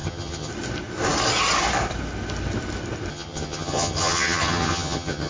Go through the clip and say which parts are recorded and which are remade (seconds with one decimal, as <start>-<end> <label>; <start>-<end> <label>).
0.0-0.5 remade; 0.5-3.1 recorded; 3.1-5.3 remade